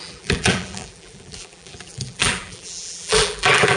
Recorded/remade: remade